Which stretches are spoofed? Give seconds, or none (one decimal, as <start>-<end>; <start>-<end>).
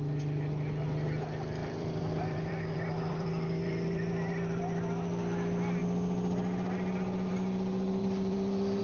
1.6-4.6; 8.0-8.8